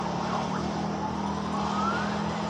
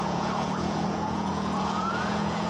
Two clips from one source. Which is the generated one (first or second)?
second